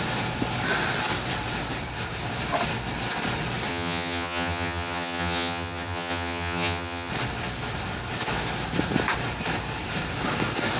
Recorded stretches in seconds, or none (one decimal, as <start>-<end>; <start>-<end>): 0.0-3.7; 7.1-10.8